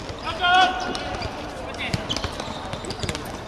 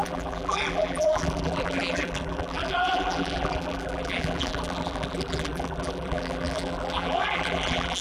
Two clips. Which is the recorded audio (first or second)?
first